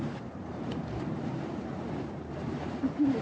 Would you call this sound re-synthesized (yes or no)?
yes